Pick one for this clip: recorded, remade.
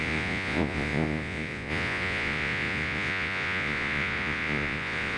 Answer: remade